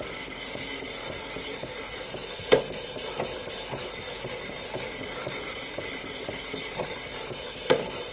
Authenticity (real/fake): real